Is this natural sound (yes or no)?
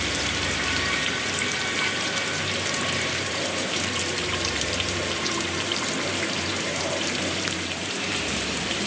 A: no